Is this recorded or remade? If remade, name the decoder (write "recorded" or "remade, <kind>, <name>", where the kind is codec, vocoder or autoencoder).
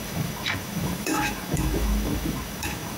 remade, autoencoder, DAC-VAE